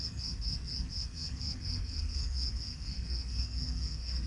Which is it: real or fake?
fake